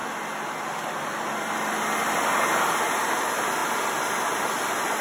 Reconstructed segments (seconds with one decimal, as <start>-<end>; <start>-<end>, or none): none